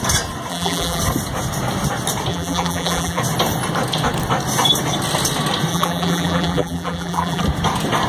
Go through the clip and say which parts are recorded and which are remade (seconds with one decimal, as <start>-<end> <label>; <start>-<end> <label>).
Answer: 0.0-0.5 recorded; 0.5-1.0 remade; 1.0-2.3 recorded; 2.3-3.2 remade; 3.2-5.7 recorded; 5.7-7.4 remade; 7.4-8.1 recorded

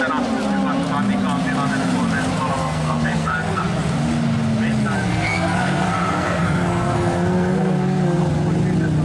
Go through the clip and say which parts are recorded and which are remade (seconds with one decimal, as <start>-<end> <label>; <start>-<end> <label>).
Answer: 0.0-2.6 recorded; 2.6-3.6 remade; 3.6-5.1 recorded; 5.1-8.2 remade; 8.2-9.0 recorded

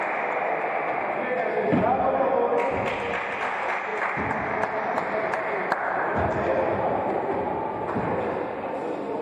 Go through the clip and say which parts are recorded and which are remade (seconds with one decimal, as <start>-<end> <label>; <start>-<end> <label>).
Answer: 0.0-9.2 recorded

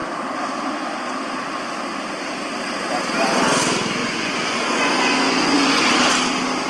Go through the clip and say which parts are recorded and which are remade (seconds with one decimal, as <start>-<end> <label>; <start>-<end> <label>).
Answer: 0.0-4.0 recorded; 4.0-5.8 remade; 5.8-6.7 recorded

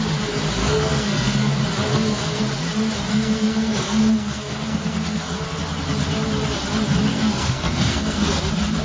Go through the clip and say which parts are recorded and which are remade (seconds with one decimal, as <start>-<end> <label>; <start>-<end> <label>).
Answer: 0.0-0.6 recorded; 0.6-1.5 remade; 1.5-1.9 recorded; 1.9-2.4 remade; 2.4-3.1 recorded; 3.1-5.4 remade; 5.4-7.1 recorded; 7.1-8.4 remade; 8.4-8.8 recorded

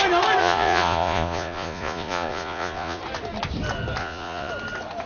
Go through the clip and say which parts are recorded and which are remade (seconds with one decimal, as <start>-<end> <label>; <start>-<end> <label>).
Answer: 0.0-0.4 recorded; 0.4-3.0 remade; 3.0-4.0 recorded; 4.0-4.5 remade; 4.5-5.1 recorded

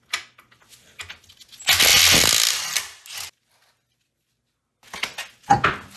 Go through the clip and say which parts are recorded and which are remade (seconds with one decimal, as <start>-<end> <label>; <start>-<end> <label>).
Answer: 0.0-6.0 recorded